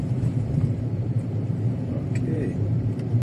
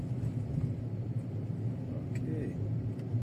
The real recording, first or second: second